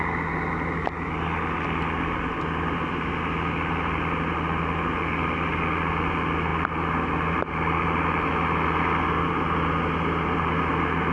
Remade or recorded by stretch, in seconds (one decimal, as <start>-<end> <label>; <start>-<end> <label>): 0.0-11.1 recorded